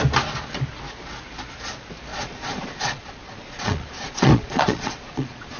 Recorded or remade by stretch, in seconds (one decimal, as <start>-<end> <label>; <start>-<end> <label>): 0.0-2.1 recorded; 2.1-5.6 remade